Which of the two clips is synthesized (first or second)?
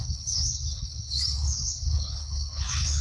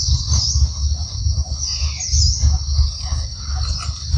first